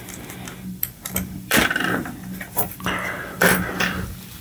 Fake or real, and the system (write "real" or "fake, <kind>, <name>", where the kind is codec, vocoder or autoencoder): fake, vocoder, BigVGAN v2